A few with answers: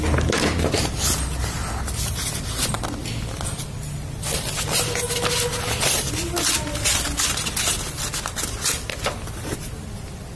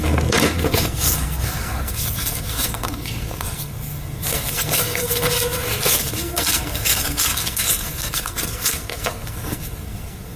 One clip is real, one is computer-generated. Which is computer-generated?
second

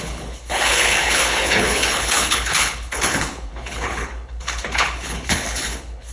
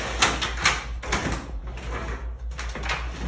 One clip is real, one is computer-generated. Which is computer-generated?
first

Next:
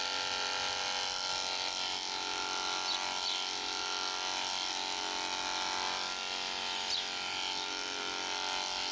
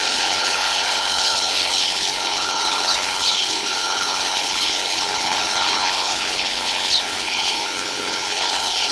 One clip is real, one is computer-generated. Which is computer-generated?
second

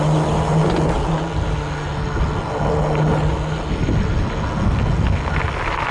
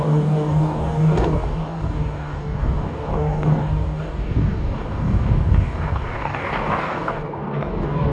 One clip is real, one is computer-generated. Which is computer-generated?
second